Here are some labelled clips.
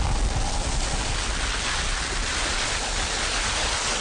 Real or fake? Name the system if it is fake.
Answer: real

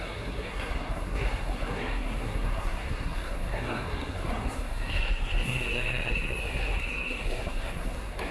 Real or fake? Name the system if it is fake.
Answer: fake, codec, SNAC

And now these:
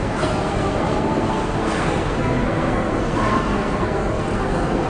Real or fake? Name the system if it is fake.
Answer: fake, codec, SNAC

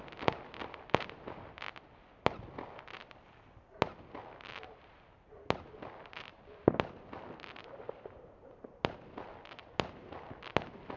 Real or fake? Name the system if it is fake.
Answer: real